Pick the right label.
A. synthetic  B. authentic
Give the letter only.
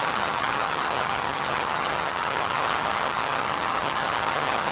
A